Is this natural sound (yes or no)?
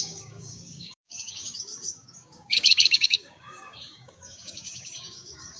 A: no